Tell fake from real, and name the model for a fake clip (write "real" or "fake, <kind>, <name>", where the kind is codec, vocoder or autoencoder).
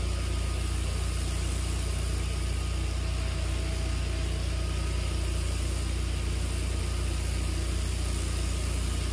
real